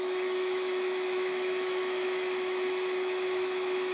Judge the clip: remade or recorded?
remade